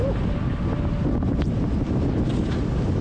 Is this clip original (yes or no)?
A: yes